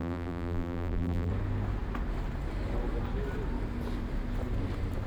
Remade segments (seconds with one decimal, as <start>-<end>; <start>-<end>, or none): 0.0-1.3